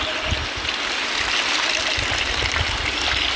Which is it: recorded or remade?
recorded